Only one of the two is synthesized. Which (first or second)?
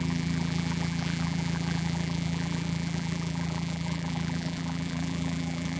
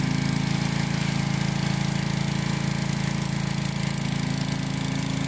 first